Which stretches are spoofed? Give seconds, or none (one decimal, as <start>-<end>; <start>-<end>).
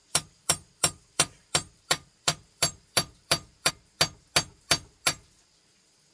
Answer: 0.0-3.7; 4.5-5.5